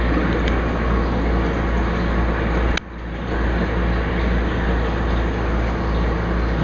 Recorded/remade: recorded